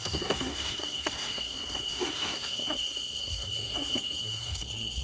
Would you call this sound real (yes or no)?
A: no